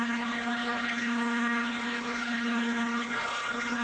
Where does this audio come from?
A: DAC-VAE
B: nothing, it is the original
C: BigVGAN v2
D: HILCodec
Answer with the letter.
D